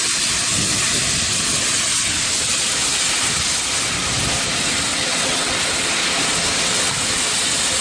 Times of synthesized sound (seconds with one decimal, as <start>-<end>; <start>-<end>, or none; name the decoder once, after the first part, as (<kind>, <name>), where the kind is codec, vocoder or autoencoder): 4.9-5.5 (vocoder, WaveNeXt)